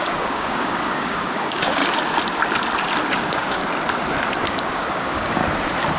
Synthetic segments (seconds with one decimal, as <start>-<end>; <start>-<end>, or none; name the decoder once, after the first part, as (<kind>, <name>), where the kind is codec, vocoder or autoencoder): 0.0-1.8 (codec, DAC); 3.1-3.6; 4.5-5.4